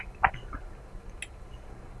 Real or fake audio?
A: real